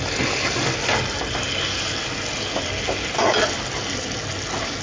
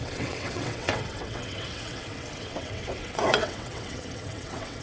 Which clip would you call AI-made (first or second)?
second